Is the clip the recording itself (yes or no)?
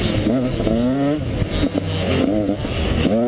yes